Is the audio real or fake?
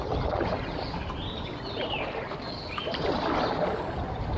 real